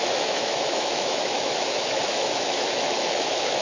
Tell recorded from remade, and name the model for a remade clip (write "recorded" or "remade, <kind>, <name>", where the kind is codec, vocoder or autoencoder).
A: remade, autoencoder, DAC-VAE